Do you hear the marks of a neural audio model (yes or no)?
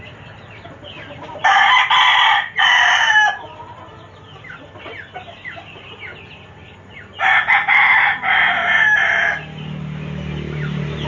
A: no